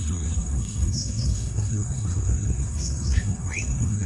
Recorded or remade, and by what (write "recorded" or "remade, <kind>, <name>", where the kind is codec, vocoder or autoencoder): remade, codec, SNAC